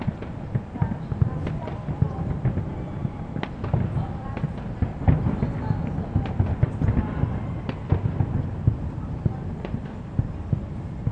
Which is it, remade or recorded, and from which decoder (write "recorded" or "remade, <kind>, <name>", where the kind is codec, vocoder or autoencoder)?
recorded